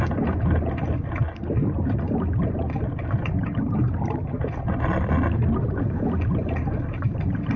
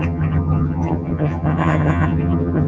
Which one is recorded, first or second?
first